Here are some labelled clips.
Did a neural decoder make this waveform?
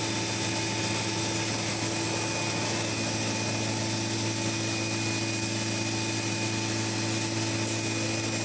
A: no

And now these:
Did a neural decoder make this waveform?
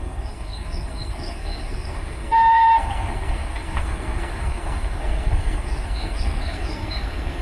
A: yes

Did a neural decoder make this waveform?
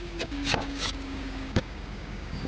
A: yes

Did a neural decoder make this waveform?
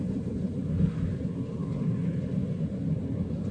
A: yes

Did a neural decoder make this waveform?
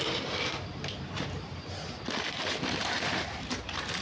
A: yes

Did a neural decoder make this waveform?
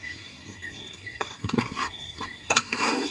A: yes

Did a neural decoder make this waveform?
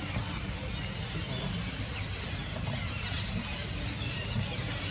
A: no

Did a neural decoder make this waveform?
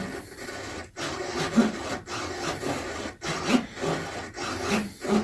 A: no